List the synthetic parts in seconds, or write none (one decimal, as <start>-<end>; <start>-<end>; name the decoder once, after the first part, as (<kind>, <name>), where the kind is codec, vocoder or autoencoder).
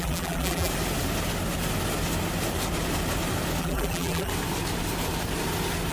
0.0-0.7 (vocoder, BigVGAN v2); 3.6-4.3